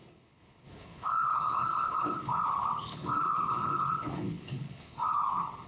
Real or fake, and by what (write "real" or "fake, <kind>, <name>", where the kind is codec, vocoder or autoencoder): fake, codec, HILCodec